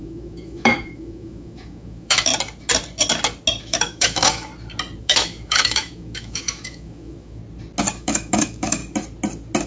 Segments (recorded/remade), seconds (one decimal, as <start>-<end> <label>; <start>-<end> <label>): 0.0-2.3 remade; 2.3-3.6 recorded; 3.6-4.5 remade; 4.5-5.0 recorded; 5.0-7.4 remade; 7.4-8.0 recorded; 8.0-8.8 remade; 8.8-9.7 recorded